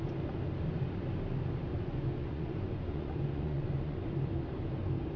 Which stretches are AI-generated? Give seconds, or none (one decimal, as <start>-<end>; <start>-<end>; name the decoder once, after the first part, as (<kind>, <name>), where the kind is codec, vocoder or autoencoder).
1.7-4.1 (vocoder, Vocos)